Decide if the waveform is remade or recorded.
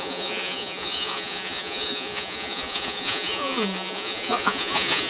remade